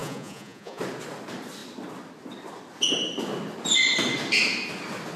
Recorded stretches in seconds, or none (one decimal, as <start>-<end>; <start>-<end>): 0.8-5.2